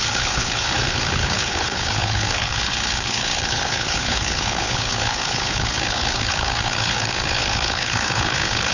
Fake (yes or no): yes